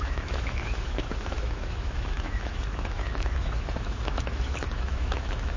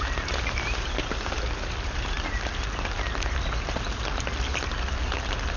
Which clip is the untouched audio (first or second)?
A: second